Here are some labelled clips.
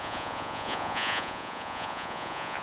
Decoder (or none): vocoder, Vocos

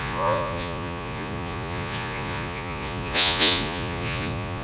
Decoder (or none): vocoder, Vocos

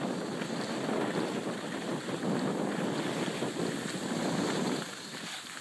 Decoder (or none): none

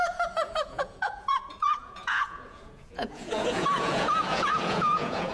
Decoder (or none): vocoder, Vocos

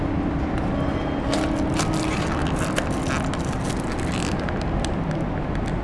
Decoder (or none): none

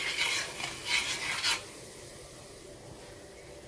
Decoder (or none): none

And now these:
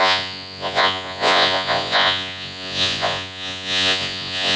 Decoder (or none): vocoder, Vocos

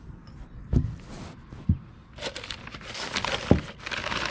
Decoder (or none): none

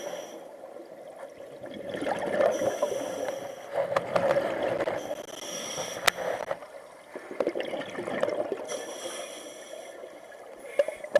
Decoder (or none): none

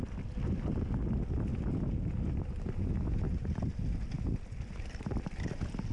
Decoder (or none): none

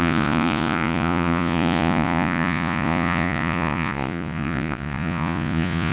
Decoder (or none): vocoder, Vocos